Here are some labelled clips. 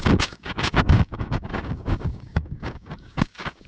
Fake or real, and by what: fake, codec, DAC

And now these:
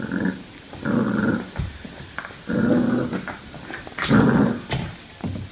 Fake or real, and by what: real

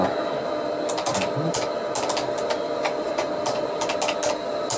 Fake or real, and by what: real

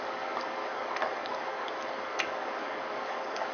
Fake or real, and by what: fake, codec, DAC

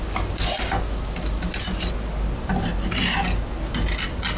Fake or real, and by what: real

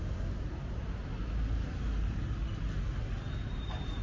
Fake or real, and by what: real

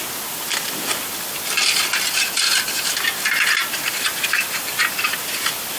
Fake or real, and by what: real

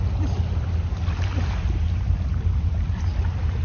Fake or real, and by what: real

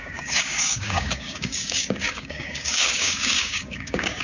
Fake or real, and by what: fake, codec, DAC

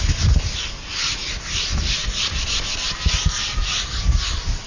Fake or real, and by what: real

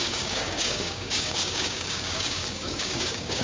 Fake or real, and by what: fake, codec, DAC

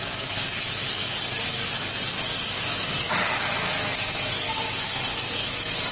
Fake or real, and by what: fake, codec, DAC